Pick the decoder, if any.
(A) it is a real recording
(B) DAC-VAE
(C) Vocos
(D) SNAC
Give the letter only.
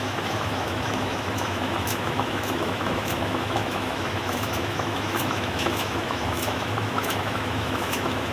B